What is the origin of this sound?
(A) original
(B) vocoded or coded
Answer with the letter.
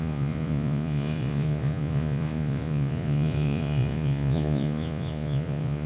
B